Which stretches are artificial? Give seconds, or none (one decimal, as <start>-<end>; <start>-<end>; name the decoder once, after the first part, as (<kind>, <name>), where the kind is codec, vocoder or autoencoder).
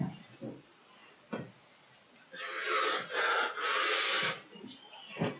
none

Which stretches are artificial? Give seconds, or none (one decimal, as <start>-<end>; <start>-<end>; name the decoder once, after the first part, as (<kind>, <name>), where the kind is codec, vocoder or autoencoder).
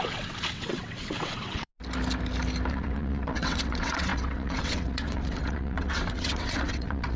0.0-1.7 (vocoder, WaveNeXt); 2.7-7.2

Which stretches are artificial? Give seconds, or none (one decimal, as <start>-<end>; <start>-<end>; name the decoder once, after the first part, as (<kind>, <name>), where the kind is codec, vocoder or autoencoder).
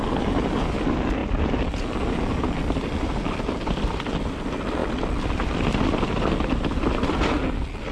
none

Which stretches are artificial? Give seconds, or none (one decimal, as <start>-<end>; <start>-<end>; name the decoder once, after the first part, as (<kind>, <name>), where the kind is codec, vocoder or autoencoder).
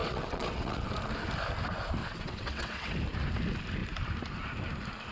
0.0-0.9 (vocoder, WaveNeXt); 2.0-2.9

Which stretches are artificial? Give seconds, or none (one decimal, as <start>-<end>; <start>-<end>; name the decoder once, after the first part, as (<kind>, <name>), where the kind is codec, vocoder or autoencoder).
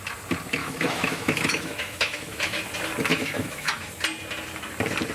0.6-2.6 (autoencoder, DAC-VAE); 3.1-3.9